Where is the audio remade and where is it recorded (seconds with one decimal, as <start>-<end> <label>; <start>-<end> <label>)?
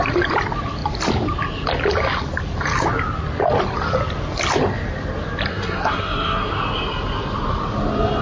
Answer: 0.0-5.5 recorded; 5.5-6.5 remade; 6.5-8.2 recorded